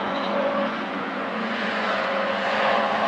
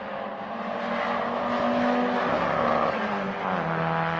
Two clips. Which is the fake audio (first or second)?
first